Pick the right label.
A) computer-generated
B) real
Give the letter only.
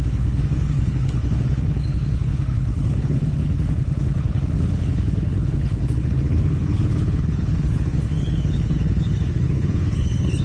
A